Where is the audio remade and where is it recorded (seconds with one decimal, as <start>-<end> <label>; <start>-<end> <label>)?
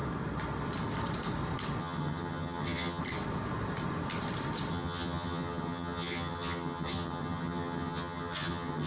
0.0-1.8 recorded; 1.8-3.0 remade; 3.0-4.7 recorded; 4.7-8.9 remade